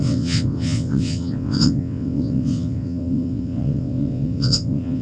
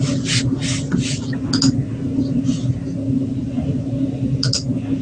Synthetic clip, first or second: first